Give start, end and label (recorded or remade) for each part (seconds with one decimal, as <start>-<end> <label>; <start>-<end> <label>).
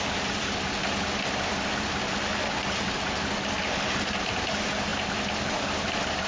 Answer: 0.0-6.3 recorded